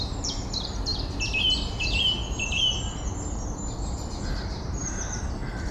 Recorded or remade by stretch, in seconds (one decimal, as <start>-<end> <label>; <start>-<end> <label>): 0.0-0.9 remade; 0.9-4.3 recorded; 4.3-5.7 remade